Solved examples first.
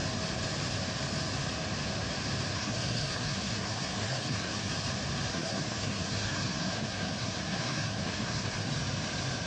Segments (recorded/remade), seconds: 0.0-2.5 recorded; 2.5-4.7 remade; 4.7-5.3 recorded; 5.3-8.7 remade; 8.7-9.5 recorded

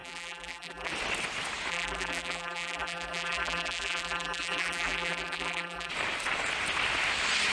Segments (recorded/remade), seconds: 0.0-0.9 remade; 0.9-1.7 recorded; 1.7-5.9 remade; 5.9-7.5 recorded